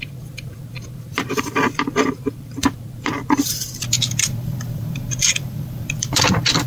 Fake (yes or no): yes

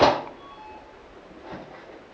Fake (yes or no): no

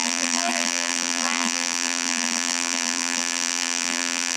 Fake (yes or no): yes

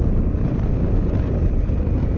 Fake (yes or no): yes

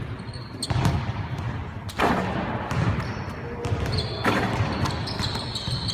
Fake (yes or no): no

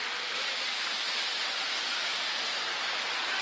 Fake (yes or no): yes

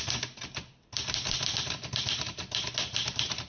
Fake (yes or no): no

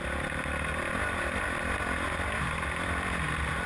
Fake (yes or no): no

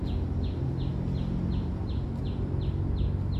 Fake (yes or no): no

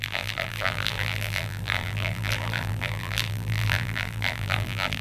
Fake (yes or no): yes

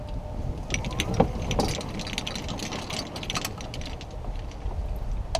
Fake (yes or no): no